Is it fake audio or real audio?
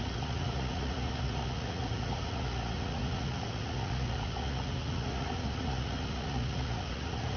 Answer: fake